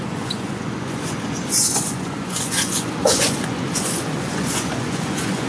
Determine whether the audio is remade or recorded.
remade